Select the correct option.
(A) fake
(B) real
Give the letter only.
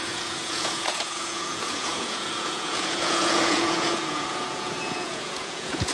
A